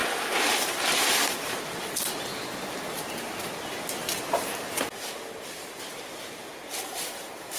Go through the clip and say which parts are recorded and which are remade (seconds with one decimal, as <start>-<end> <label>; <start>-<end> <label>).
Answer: 0.0-2.3 remade; 2.3-6.9 recorded; 6.9-7.6 remade